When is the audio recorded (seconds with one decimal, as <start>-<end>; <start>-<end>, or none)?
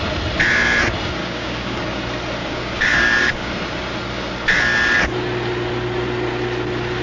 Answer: 0.0-1.2; 1.8-2.4; 3.5-7.0